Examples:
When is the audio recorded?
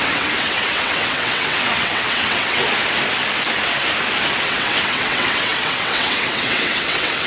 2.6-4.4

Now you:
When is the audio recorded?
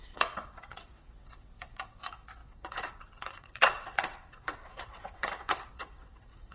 none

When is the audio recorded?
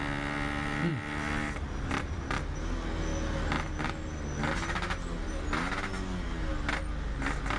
0.0-7.6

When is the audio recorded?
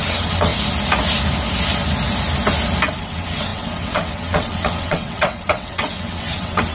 0.5-3.0